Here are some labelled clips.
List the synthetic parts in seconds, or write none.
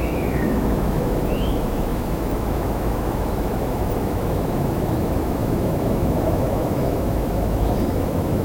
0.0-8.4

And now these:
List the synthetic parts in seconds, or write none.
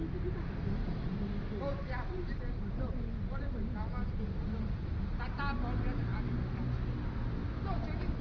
none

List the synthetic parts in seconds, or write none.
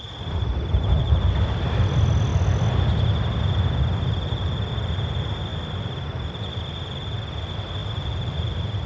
0.5-1.2; 7.8-8.4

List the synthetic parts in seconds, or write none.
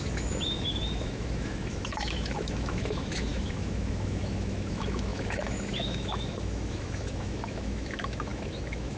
0.0-9.0